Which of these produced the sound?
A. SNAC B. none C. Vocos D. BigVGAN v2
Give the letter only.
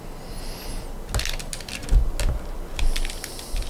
B